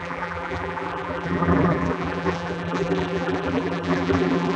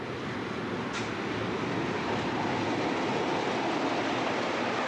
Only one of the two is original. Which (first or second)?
second